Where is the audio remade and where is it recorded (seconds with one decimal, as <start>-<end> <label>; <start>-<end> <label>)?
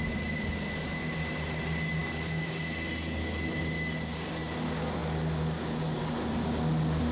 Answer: 0.0-7.1 recorded